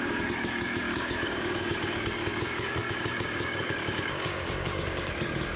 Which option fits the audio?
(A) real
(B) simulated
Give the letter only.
B